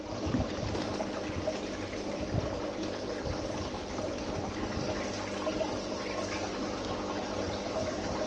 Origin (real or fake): real